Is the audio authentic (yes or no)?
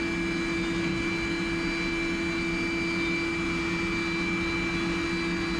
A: yes